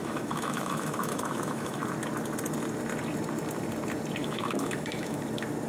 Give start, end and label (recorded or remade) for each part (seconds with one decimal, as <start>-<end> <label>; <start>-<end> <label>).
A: 0.0-1.8 remade; 1.8-4.2 recorded; 4.2-5.2 remade; 5.2-5.7 recorded